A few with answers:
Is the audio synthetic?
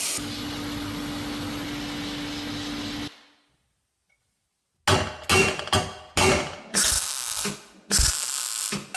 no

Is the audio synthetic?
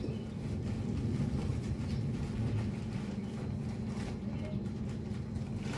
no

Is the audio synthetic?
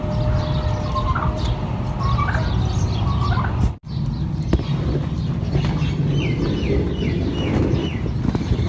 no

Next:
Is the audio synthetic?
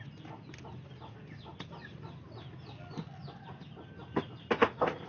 no